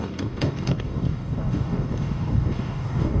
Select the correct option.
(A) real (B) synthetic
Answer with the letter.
B